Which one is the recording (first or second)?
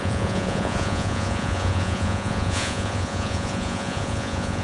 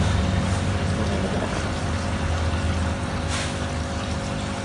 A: second